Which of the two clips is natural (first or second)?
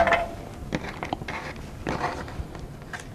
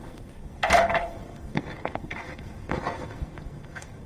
first